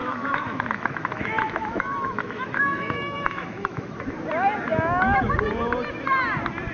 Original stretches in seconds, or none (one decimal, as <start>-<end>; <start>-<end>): 4.0-6.7